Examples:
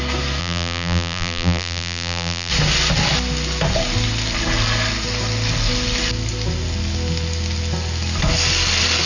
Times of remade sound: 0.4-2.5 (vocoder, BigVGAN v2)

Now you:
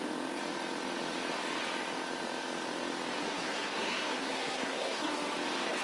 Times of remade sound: 3.2-5.1 (codec, SNAC)

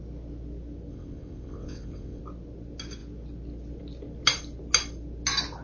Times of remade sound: 0.9-2.2 (vocoder, WaveNeXt)

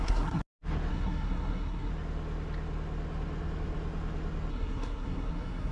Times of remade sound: 0.0-0.4 (codec, SNAC); 0.9-1.9; 4.5-5.7